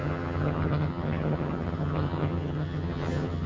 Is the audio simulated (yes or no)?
yes